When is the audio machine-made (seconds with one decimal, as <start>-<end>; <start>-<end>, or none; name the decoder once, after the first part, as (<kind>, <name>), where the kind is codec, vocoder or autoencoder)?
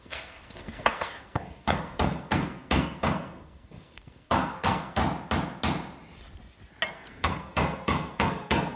0.0-5.0 (codec, SNAC); 6.9-8.8